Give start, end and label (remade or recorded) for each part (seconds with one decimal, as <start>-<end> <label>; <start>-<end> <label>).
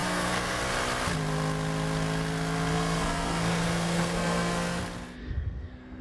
0.0-0.6 remade; 0.6-2.7 recorded; 2.7-4.8 remade; 4.8-5.2 recorded; 5.2-6.0 remade